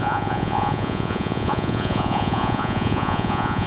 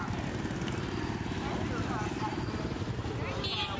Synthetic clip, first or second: first